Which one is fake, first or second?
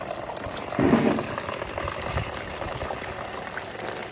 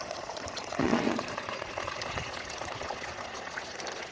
second